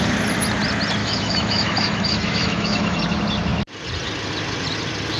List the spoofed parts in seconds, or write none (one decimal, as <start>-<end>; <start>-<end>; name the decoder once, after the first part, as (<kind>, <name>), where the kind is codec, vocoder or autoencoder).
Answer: 1.0-3.0 (autoencoder, DAC-VAE)